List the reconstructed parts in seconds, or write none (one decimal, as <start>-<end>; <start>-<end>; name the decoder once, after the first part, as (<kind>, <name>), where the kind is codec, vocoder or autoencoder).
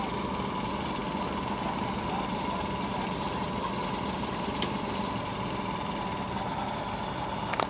none